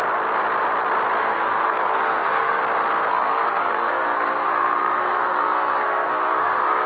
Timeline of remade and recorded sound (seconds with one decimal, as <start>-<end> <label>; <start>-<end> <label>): 0.0-1.2 recorded; 1.2-2.6 remade; 2.6-3.1 recorded; 3.1-6.9 remade

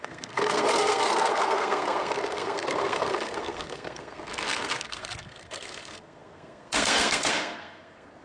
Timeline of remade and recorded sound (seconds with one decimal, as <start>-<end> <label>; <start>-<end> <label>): 0.0-8.2 remade

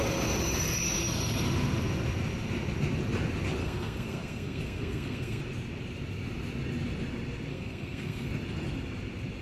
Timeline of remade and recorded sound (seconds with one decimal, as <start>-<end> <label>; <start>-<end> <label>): 0.0-3.6 recorded; 3.6-5.4 remade; 5.4-7.5 recorded; 7.5-8.3 remade; 8.3-9.4 recorded

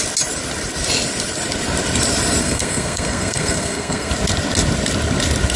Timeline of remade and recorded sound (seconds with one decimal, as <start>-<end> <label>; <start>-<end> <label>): 0.0-2.4 recorded; 2.4-4.1 remade; 4.1-5.6 recorded

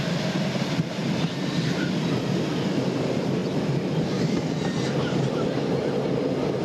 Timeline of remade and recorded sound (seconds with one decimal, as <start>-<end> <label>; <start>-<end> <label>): 0.0-6.6 recorded

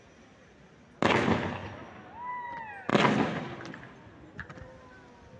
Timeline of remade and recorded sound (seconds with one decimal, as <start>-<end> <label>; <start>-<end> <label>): 0.0-5.4 recorded